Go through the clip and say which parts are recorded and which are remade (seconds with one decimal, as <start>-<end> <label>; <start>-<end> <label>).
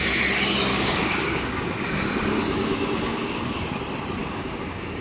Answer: 0.0-0.7 recorded; 0.7-3.7 remade; 3.7-4.2 recorded; 4.2-5.0 remade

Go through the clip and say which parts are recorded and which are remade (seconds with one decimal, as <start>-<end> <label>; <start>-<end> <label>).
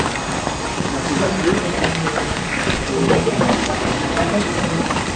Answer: 0.0-0.7 recorded; 0.7-1.3 remade; 1.3-2.0 recorded; 2.0-4.2 remade; 4.2-5.2 recorded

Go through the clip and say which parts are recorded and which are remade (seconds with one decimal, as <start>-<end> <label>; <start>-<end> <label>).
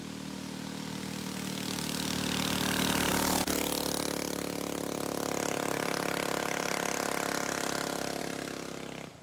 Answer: 0.0-9.2 recorded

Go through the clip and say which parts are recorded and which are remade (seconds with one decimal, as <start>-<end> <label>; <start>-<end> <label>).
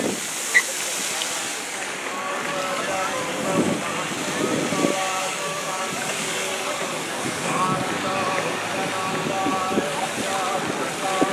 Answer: 0.0-1.4 recorded; 1.4-3.5 remade; 3.5-5.1 recorded; 5.1-7.9 remade; 7.9-9.5 recorded; 9.5-10.2 remade; 10.2-11.3 recorded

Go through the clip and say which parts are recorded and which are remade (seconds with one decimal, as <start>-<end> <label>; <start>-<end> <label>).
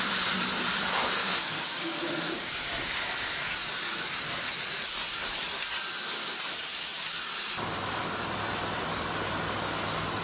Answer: 0.0-1.2 recorded; 1.2-3.1 remade; 3.1-10.2 recorded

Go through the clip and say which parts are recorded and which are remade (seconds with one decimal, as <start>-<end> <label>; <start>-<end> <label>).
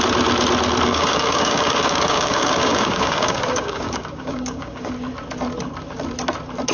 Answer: 0.0-0.9 recorded; 0.9-4.9 remade; 4.9-6.7 recorded